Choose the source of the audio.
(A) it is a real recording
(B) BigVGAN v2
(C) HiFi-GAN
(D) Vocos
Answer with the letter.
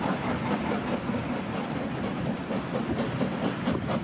A